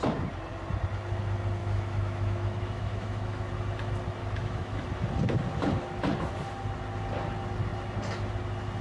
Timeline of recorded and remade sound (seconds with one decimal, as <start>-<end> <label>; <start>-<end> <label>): 0.0-1.6 recorded; 1.6-3.5 remade; 3.5-4.2 recorded; 4.2-4.8 remade; 4.8-8.8 recorded